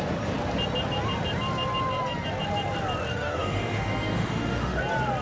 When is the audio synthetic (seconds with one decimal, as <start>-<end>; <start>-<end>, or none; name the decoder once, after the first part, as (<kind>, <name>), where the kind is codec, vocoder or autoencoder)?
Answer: 3.1-4.8 (autoencoder, DAC-VAE)